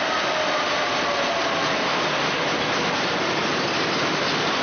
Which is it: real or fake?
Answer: real